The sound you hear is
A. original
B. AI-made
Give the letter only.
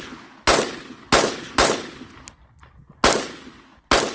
A